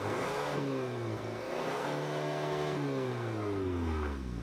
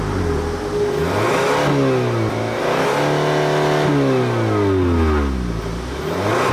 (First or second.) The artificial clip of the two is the first